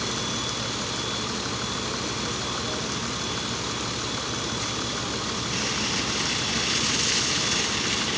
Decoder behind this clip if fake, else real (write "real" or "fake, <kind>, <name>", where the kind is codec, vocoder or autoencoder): real